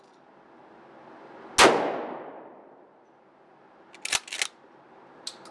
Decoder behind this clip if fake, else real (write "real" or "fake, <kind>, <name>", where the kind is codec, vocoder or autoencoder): real